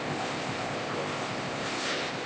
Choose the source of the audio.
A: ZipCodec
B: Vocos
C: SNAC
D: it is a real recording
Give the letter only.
A